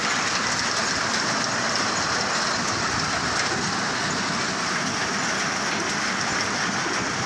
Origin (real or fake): real